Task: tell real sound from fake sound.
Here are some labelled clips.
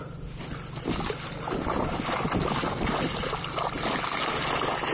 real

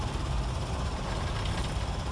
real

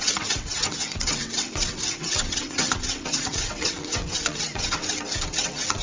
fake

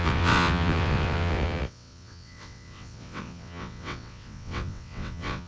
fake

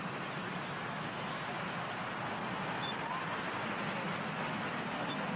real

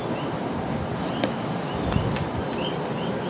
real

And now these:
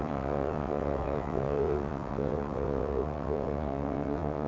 fake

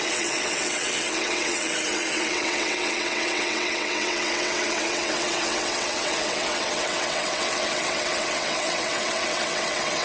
fake